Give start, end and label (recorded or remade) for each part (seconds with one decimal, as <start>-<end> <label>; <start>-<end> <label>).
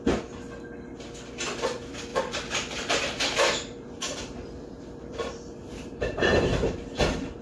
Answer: 0.0-2.1 recorded; 2.1-6.5 remade; 6.5-7.4 recorded